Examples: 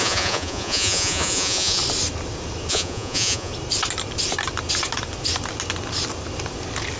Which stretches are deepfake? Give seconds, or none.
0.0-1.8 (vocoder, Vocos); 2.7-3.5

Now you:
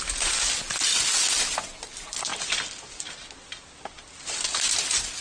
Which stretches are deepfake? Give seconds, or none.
none

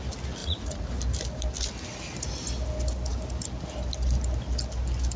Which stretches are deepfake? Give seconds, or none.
0.4-0.9 (vocoder, Vocos)

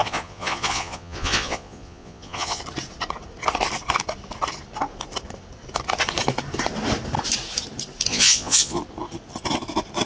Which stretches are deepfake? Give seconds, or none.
0.0-2.6 (vocoder, Vocos); 8.1-8.8